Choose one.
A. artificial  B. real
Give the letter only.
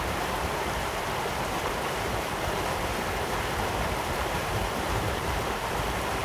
A